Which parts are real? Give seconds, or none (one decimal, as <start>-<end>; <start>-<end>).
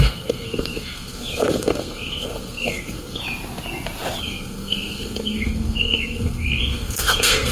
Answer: 3.2-4.2